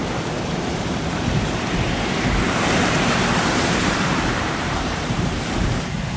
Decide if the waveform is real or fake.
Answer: fake